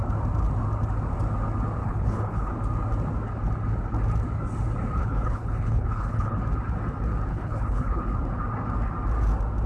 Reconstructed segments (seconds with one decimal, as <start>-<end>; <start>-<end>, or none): 1.8-2.5; 5.0-6.4; 7.3-8.0